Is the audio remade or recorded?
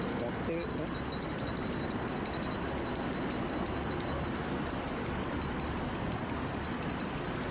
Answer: recorded